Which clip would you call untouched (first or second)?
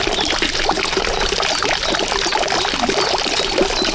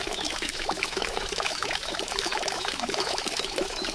first